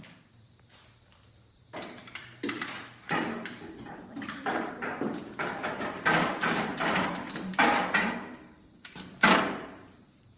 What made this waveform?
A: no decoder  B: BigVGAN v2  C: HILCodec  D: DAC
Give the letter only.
B